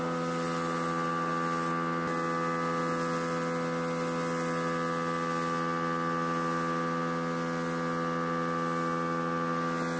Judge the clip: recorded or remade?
recorded